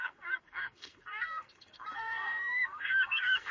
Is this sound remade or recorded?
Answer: remade